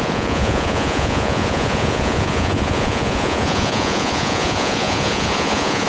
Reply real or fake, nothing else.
fake